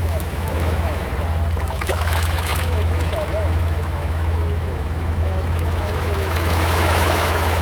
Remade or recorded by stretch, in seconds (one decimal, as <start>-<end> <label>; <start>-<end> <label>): 0.0-1.1 remade; 1.1-1.6 recorded; 1.6-7.6 remade